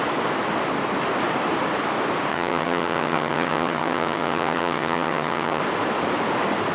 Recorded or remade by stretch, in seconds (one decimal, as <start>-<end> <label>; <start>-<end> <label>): 0.0-2.3 recorded; 2.3-5.6 remade; 5.6-6.7 recorded